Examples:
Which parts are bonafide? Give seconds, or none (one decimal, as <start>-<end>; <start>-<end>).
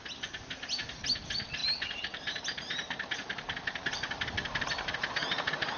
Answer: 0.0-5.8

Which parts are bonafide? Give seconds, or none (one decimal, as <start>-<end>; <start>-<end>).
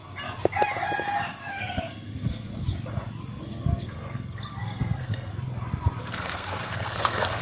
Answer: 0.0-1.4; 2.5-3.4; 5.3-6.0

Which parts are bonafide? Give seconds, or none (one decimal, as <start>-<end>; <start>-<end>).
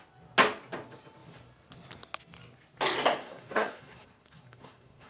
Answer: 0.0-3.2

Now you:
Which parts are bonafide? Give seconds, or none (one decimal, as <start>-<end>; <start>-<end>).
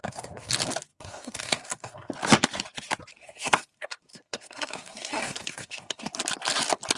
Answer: 0.5-0.9; 2.1-3.2; 6.1-7.0